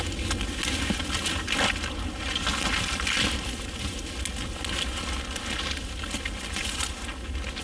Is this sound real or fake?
real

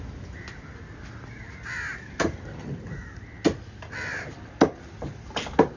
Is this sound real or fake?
real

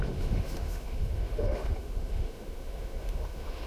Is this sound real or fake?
fake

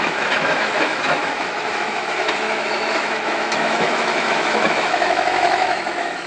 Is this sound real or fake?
fake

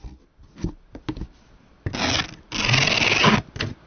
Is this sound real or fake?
real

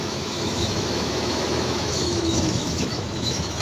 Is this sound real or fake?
fake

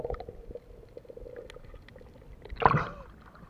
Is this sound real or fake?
real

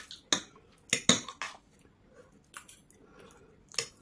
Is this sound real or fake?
real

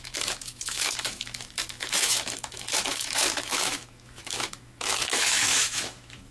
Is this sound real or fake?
fake